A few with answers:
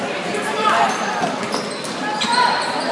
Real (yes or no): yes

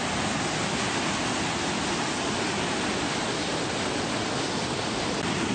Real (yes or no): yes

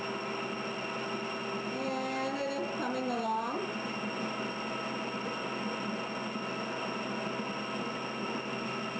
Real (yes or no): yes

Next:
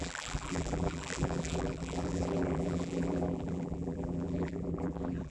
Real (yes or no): no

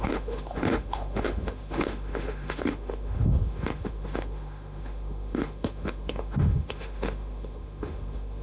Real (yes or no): no